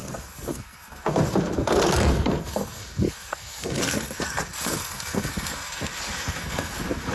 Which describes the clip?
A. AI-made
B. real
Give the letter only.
A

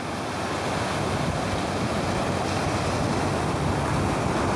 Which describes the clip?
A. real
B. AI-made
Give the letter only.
A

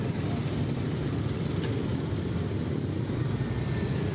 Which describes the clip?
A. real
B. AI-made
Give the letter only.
A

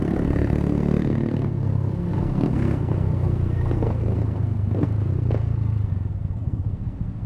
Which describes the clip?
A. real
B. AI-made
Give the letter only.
B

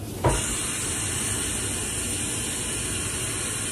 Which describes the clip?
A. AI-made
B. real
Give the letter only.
B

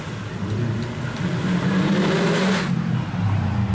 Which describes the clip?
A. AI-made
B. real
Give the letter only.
B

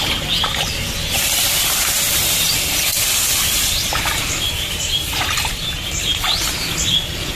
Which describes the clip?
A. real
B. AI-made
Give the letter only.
A